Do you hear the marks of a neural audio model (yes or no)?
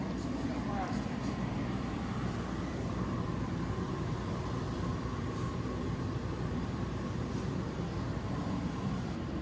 yes